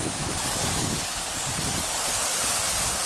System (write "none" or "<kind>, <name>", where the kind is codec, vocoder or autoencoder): codec, DAC